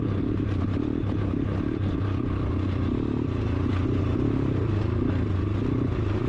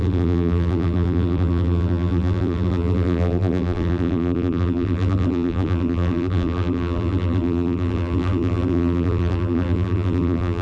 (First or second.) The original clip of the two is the first